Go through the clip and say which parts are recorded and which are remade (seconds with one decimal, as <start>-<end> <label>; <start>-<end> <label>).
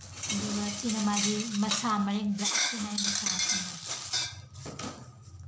0.0-2.0 recorded; 2.0-3.1 remade; 3.1-5.5 recorded